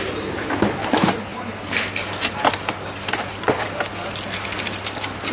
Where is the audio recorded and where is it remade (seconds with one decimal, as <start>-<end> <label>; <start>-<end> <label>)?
0.0-1.3 recorded; 1.3-3.9 remade; 3.9-5.3 recorded